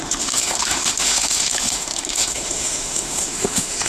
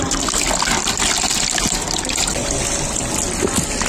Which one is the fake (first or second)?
first